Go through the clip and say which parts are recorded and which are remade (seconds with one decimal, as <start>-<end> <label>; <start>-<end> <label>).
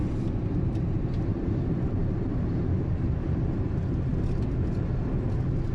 0.0-1.3 recorded; 1.3-3.5 remade; 3.5-5.7 recorded